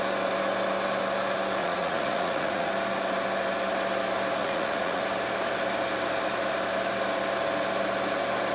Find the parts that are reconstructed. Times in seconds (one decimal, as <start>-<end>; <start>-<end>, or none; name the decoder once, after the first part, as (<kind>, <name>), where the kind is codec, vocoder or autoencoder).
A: 1.6-2.7 (vocoder, Vocos); 4.4-5.0